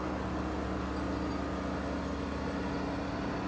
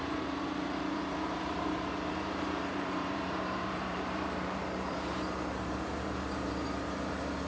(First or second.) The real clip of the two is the first